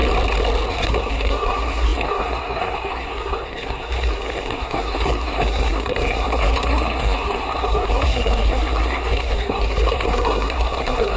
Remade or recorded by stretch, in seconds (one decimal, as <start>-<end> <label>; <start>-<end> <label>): 0.0-0.7 recorded; 0.7-11.2 remade